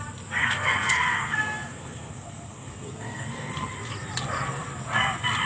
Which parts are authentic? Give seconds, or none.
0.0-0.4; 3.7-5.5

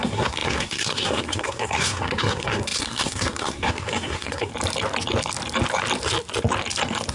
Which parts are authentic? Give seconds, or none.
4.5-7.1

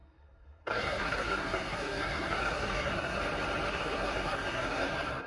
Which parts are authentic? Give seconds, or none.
3.2-3.7

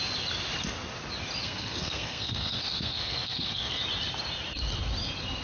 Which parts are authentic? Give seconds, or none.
0.0-1.4; 3.8-5.4

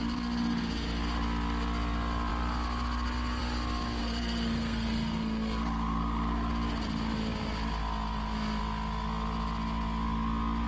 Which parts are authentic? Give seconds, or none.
0.0-4.0; 6.5-10.7

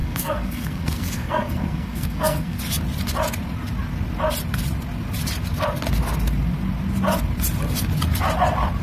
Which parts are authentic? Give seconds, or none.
2.6-8.8